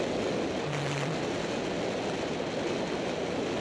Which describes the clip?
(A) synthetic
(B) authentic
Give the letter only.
B